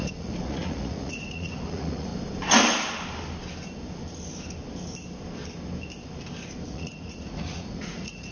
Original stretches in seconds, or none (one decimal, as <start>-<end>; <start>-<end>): 2.1-6.7